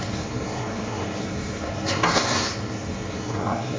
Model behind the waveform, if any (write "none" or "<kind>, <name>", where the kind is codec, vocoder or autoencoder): codec, SNAC